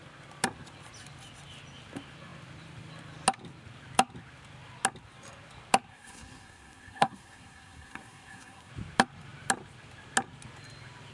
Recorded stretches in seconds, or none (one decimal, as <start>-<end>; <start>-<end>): 0.0-5.9; 8.7-11.1